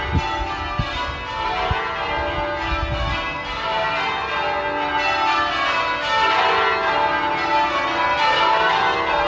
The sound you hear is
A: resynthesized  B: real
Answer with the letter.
B